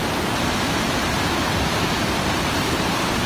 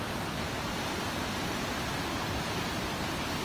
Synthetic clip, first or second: first